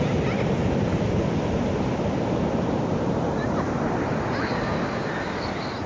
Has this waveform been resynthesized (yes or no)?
no